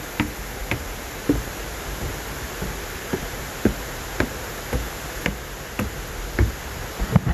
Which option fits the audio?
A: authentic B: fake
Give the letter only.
A